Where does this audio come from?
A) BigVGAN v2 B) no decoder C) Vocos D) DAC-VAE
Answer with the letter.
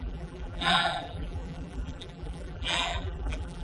A